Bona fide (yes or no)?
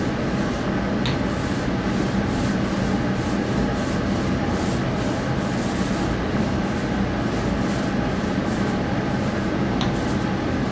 yes